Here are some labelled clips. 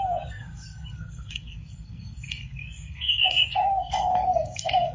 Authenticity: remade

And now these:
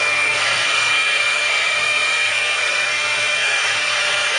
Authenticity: remade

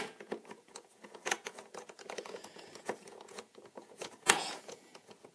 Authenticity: remade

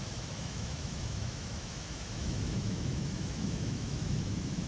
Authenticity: remade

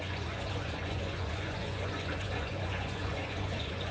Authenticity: remade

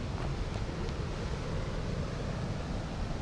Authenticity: recorded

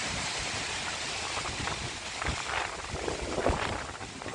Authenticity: recorded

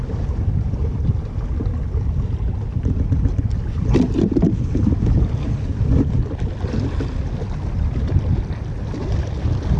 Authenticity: recorded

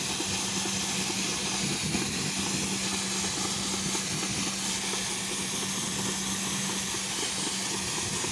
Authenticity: recorded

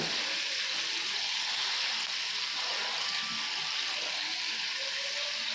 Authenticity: recorded